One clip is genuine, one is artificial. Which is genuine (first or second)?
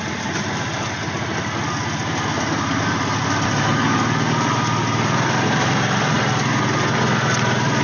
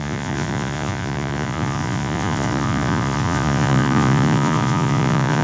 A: first